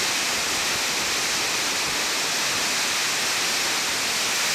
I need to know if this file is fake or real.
real